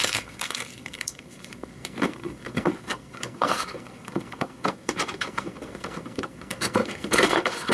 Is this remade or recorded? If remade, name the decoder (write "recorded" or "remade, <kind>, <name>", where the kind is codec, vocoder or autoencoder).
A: remade, codec, SNAC